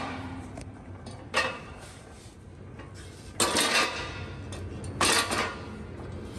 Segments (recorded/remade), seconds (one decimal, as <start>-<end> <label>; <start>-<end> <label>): 0.0-2.3 remade; 2.3-6.4 recorded